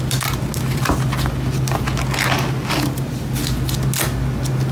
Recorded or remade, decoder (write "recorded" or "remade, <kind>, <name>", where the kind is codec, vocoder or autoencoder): recorded